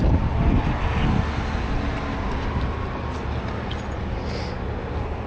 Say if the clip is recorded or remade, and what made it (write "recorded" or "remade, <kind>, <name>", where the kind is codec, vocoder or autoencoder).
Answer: recorded